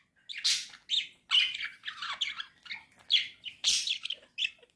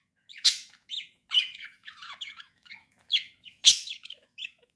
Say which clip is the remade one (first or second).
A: second